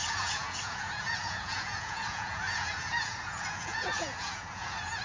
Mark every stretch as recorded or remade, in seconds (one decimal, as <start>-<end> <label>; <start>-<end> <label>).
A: 0.0-5.0 remade